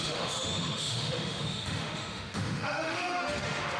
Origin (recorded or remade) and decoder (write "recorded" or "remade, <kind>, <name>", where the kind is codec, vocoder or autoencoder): remade, autoencoder, DAC-VAE